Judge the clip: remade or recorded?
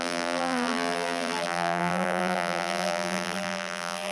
remade